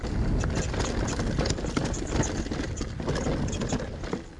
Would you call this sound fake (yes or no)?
no